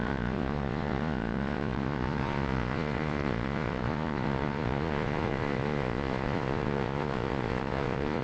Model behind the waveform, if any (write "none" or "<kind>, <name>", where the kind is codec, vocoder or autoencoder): vocoder, Vocos